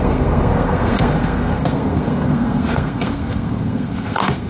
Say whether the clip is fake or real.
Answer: fake